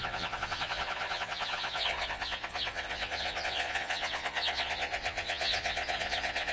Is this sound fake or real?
fake